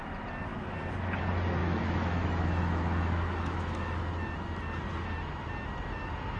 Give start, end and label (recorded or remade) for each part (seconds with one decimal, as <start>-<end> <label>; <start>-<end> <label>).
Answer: 0.0-1.6 recorded; 1.6-4.1 remade; 4.1-6.4 recorded